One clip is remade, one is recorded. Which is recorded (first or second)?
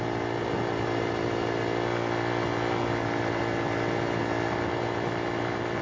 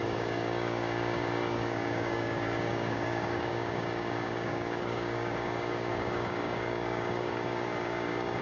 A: first